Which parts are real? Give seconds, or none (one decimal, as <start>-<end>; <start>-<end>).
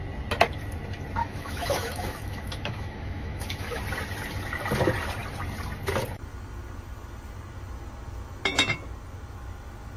0.0-1.2; 3.8-10.0